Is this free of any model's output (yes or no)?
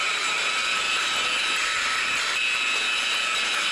yes